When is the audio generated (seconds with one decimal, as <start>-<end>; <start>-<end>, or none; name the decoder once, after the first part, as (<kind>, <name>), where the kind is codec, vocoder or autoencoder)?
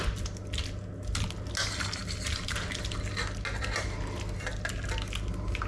none